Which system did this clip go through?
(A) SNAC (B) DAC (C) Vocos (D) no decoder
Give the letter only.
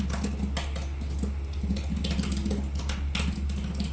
D